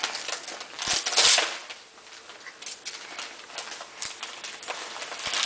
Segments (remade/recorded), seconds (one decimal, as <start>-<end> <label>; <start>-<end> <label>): 0.0-5.5 recorded